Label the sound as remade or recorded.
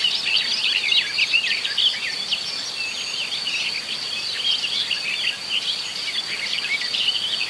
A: recorded